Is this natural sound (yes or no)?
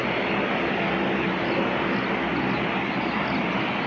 yes